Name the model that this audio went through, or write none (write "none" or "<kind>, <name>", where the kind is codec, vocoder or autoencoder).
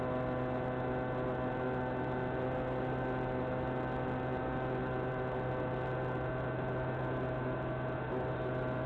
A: none